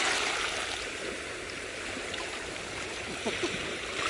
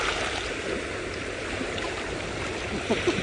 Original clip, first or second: second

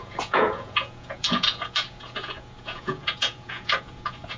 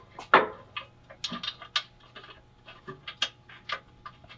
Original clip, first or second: second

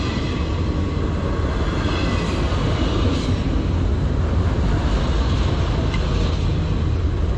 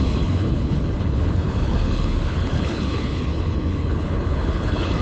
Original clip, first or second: first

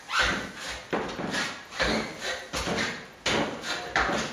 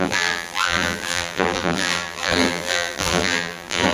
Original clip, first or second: first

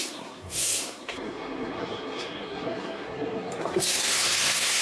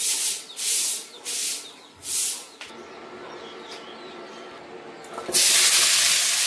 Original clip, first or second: second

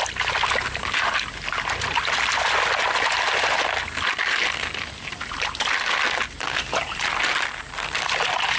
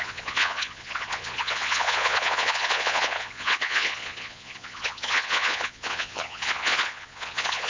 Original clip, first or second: first